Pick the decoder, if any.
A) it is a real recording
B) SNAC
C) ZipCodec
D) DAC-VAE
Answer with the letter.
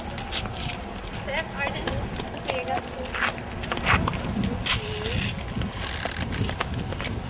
A